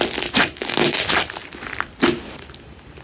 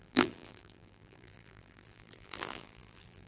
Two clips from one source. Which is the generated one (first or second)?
second